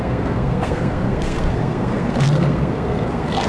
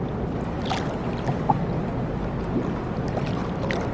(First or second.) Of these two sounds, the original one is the second